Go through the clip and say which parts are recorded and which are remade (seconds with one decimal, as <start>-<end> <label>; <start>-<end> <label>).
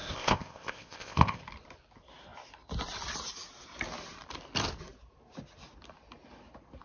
0.0-1.4 remade; 1.4-6.8 recorded